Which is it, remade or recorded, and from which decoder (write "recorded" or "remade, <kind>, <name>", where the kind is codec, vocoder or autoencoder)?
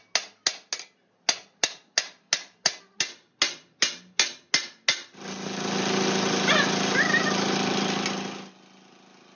recorded